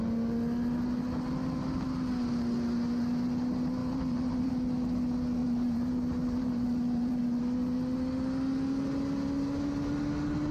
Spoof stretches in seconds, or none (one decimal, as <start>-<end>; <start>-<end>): 3.8-4.5; 5.4-7.4